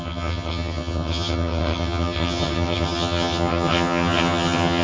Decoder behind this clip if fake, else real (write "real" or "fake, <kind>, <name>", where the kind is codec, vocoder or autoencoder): fake, vocoder, HiFi-GAN